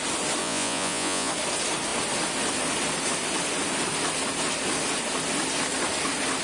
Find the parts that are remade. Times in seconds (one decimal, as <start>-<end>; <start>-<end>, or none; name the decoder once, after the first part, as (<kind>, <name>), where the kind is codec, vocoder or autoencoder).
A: 0.4-1.3 (vocoder, Vocos)